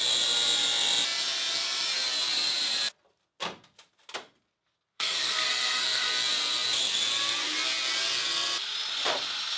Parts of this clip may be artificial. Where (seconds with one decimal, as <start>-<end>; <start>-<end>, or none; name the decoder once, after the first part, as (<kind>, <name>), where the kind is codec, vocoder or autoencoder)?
4.9-6.1 (codec, SNAC)